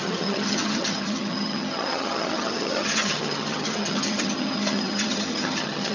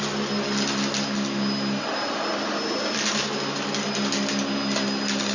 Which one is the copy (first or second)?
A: first